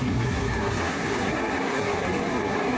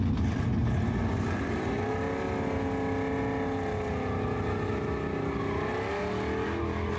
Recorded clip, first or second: second